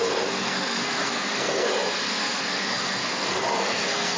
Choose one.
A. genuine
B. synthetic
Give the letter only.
B